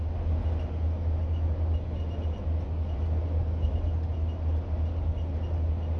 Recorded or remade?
recorded